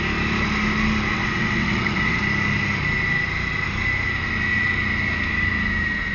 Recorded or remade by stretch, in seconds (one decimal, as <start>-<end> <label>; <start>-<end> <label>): 0.0-1.1 recorded; 1.1-2.2 remade; 2.2-6.1 recorded